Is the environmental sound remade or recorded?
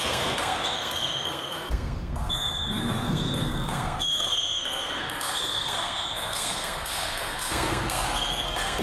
remade